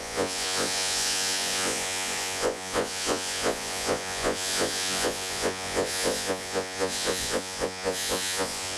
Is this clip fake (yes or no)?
yes